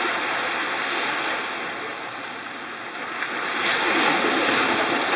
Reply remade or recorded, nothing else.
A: recorded